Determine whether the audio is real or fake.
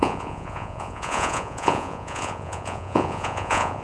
fake